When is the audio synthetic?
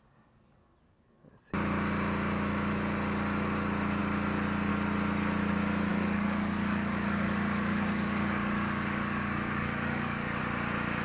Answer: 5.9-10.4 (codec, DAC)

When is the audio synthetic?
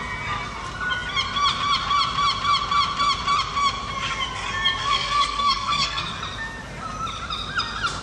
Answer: 4.8-6.1 (codec, SNAC)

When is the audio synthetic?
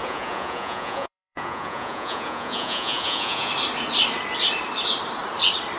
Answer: 0.0-3.5 (vocoder, Vocos)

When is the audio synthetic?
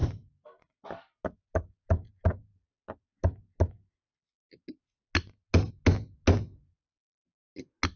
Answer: 0.0-0.8 (vocoder, BigVGAN v2)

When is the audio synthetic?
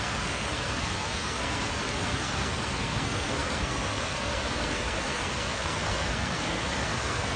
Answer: 0.0-7.4 (codec, SNAC)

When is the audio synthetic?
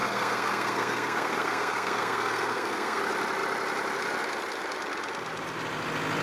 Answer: 0.0-3.0 (codec, SNAC)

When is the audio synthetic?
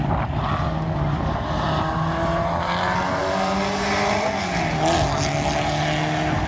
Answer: none